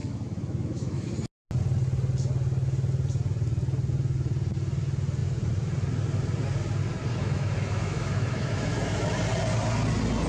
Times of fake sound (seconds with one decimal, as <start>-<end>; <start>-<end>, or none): 0.0-1.1; 7.2-9.1